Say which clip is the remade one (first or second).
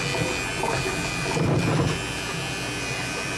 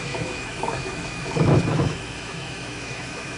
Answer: second